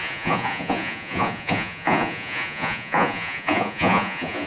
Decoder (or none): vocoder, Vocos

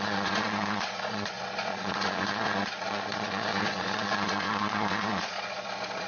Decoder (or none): vocoder, Vocos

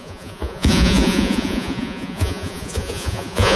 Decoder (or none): vocoder, Vocos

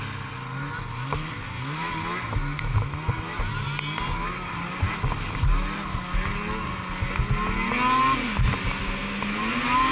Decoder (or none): none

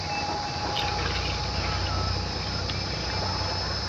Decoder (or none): none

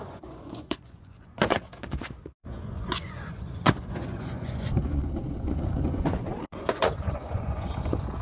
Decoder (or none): vocoder, Vocos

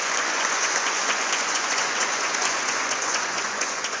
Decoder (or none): vocoder, Vocos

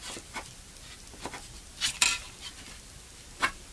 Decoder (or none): none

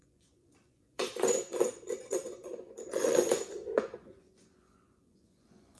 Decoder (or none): vocoder, Vocos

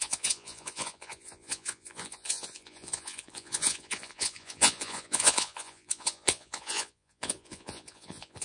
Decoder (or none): vocoder, Vocos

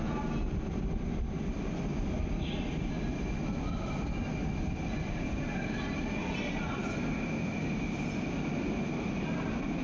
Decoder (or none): none